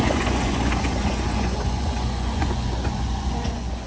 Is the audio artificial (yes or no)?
yes